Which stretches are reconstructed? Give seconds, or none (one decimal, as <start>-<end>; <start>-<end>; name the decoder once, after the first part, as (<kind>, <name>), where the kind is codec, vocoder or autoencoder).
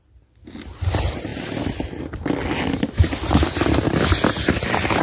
none